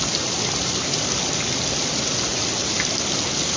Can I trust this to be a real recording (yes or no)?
yes